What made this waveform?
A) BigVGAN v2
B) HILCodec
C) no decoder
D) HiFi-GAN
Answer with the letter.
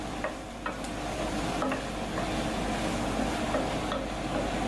C